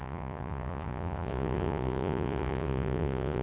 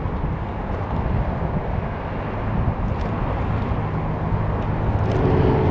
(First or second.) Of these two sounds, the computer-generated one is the first